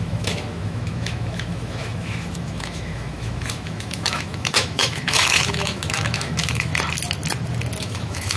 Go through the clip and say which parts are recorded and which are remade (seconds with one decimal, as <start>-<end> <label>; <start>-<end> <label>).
0.0-6.7 remade; 6.7-7.8 recorded; 7.8-8.4 remade